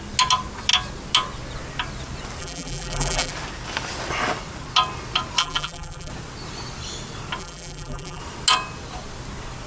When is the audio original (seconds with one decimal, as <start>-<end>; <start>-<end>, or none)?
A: 0.0-2.4; 3.3-5.4; 6.1-7.4; 8.2-9.7